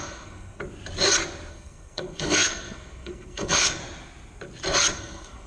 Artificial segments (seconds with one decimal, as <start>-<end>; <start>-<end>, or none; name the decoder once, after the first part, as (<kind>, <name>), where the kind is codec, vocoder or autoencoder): 0.0-0.6 (codec, SNAC); 1.5-3.8; 4.9-5.5

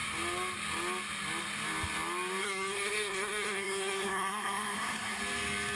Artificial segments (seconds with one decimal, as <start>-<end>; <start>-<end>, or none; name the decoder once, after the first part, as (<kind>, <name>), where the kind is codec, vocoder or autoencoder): 2.4-5.2 (codec, SNAC)

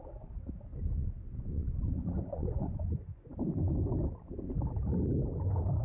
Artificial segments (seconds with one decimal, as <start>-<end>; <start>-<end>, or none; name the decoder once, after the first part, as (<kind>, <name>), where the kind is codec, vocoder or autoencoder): 0.7-3.3 (vocoder, Vocos)

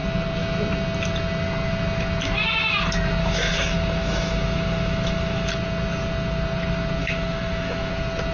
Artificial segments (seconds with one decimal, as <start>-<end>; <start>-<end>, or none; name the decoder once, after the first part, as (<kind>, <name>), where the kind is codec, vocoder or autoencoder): 3.2-5.5 (autoencoder, DAC-VAE); 7.0-7.9

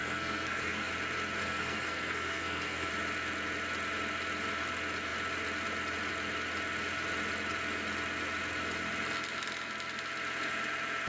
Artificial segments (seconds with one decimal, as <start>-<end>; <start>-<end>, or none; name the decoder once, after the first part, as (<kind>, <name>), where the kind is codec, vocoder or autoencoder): 0.0-0.9 (codec, SNAC); 1.4-2.9